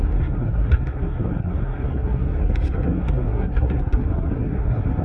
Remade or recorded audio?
remade